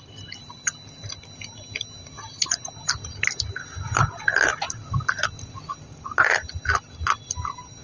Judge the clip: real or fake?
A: real